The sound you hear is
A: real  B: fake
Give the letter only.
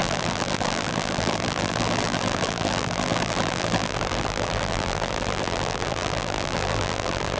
B